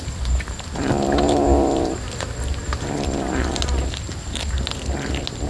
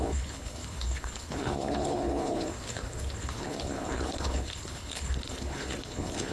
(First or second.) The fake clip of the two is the second